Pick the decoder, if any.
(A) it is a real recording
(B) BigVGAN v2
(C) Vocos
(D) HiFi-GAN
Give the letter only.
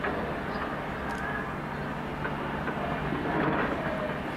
A